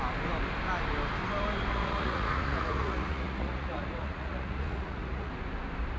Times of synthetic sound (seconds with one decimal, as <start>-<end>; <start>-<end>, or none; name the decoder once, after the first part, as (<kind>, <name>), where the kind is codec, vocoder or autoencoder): 1.7-5.3 (vocoder, Vocos)